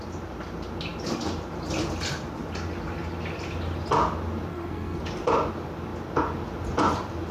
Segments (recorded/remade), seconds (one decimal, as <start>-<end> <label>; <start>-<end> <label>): 0.0-4.5 recorded; 4.5-5.0 remade; 5.0-7.3 recorded